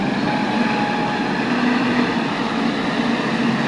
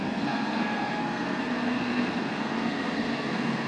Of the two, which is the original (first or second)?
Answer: first